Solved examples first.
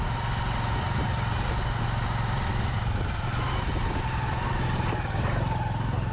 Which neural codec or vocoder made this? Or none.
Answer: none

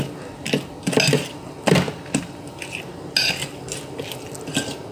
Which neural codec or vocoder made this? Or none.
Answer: none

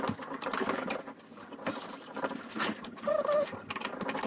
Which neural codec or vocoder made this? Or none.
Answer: none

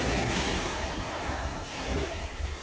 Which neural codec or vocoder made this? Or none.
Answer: codec, SNAC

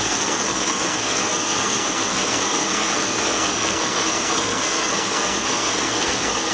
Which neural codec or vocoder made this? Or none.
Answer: codec, SNAC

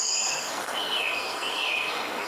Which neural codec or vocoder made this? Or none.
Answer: codec, SNAC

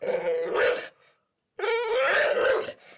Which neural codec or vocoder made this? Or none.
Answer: none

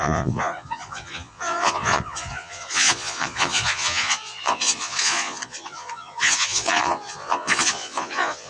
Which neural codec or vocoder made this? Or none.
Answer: vocoder, Vocos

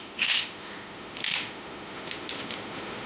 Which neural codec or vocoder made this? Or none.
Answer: autoencoder, DAC-VAE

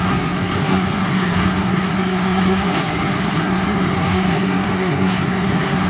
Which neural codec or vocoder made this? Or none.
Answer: codec, SNAC